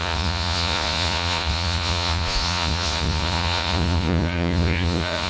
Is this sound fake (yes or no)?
yes